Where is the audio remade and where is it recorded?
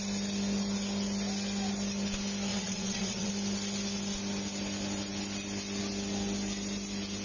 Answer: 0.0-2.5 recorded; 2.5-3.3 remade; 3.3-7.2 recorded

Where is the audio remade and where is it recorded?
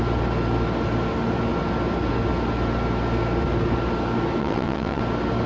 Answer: 0.0-4.4 recorded; 4.4-5.0 remade; 5.0-5.5 recorded